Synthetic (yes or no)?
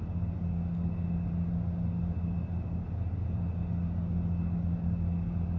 no